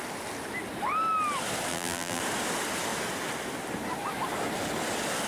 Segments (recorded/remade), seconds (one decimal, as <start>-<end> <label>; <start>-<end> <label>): 0.0-1.7 recorded; 1.7-2.2 remade; 2.2-5.3 recorded